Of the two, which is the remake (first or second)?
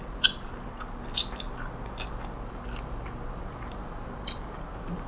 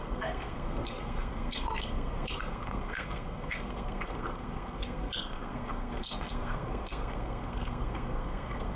second